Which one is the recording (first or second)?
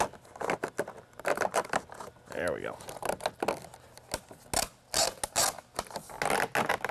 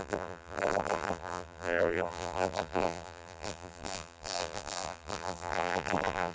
first